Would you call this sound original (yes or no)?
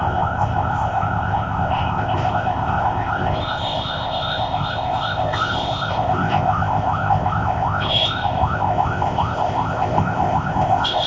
no